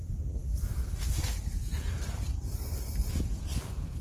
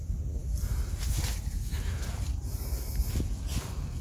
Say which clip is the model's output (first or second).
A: first